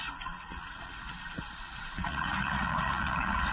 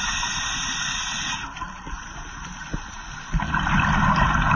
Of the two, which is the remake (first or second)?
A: first